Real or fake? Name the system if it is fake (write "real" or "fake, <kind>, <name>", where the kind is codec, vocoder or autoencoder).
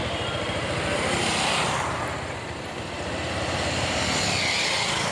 real